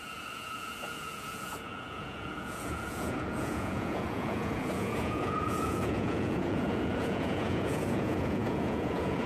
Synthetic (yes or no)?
yes